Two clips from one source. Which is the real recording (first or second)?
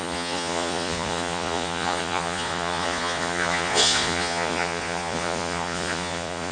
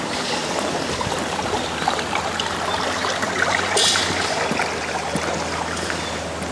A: second